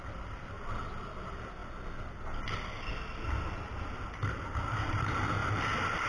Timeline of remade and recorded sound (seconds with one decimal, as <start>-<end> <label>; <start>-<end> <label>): 0.0-6.1 recorded

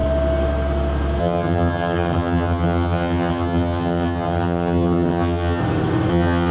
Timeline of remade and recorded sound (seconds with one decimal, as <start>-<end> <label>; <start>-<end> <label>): 0.0-1.2 recorded; 1.2-5.6 remade; 5.6-6.1 recorded; 6.1-6.5 remade

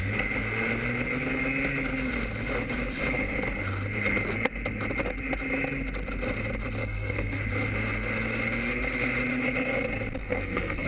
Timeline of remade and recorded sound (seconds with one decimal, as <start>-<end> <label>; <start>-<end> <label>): 0.0-6.8 recorded; 6.8-7.4 remade; 7.4-10.2 recorded; 10.2-10.9 remade

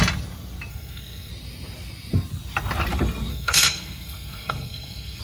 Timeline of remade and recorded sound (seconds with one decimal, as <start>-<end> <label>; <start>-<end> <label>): 0.0-0.7 recorded; 0.7-1.3 remade; 1.3-3.3 recorded; 3.3-5.2 remade

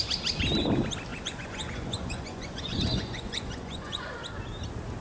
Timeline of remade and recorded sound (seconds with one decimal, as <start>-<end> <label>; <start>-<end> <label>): 0.0-1.1 recorded; 1.1-4.1 remade; 4.1-5.0 recorded